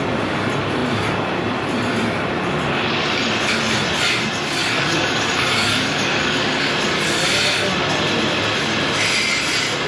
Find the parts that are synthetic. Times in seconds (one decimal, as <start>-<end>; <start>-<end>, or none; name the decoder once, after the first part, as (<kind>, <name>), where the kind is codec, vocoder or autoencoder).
4.6-6.7 (codec, DAC)